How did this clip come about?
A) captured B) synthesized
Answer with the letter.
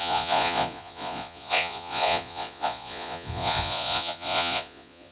B